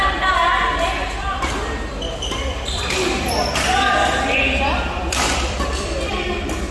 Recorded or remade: remade